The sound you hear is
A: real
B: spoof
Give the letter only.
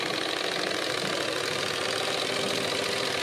A